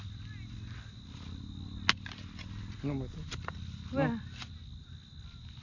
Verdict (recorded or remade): recorded